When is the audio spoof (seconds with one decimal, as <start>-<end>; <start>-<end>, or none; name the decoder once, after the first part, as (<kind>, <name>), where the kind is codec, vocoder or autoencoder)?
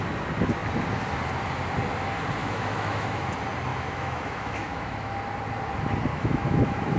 2.4-3.3 (autoencoder, DAC-VAE); 3.7-5.1; 6.1-7.0